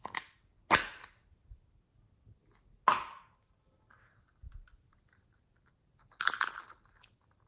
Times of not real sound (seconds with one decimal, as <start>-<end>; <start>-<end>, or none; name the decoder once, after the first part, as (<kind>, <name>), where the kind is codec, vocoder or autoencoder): none